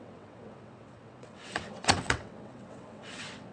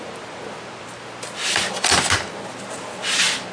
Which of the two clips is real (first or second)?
second